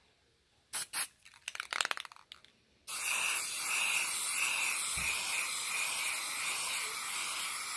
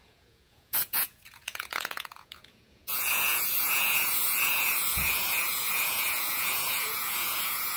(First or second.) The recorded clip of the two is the first